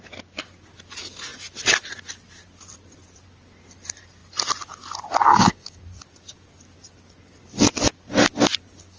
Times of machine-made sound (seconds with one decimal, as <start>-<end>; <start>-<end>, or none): 5.3-5.8